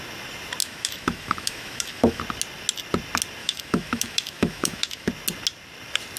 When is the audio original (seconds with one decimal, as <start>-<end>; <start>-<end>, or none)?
0.0-0.6; 2.2-3.4; 5.1-6.2